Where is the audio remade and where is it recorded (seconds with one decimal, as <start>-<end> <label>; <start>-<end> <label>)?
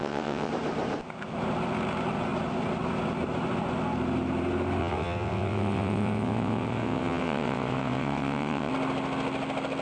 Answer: 0.0-0.5 remade; 0.5-4.8 recorded; 4.8-8.7 remade; 8.7-9.8 recorded